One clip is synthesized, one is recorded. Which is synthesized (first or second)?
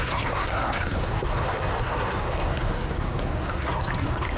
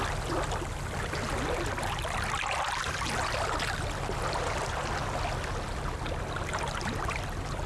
first